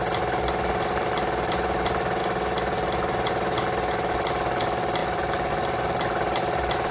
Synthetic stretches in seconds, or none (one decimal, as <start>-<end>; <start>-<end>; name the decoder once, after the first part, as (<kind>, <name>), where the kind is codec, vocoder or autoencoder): 5.0-5.5 (vocoder, BigVGAN v2)